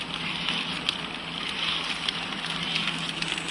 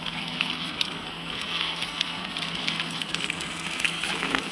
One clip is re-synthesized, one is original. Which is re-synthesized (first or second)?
second